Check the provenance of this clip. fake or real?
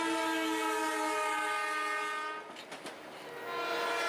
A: real